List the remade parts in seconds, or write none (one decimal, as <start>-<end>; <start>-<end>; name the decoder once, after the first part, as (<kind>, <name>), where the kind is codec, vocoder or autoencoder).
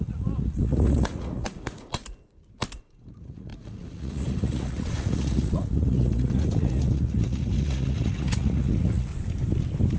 0.0-2.0 (vocoder, Vocos); 2.8-9.1